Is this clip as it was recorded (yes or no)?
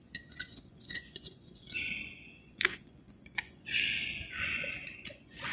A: no